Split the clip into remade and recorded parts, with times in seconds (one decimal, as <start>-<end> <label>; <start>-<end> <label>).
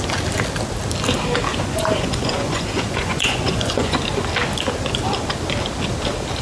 0.0-1.5 recorded; 1.5-4.0 remade; 4.0-6.4 recorded